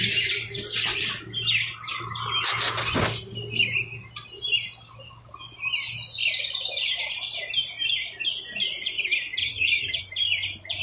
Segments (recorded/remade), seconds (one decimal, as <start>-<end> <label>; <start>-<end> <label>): 0.0-9.4 recorded; 9.4-10.0 remade; 10.0-10.8 recorded